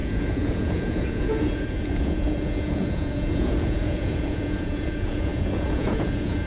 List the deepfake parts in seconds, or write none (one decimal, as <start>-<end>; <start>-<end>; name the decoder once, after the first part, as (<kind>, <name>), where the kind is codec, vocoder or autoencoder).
0.0-6.5 (vocoder, Vocos)